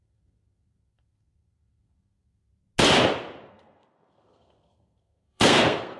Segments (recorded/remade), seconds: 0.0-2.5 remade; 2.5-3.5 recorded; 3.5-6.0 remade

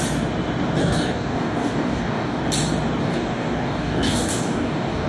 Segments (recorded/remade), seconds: 0.0-0.8 recorded; 0.8-2.4 remade; 2.4-3.0 recorded; 3.0-5.1 remade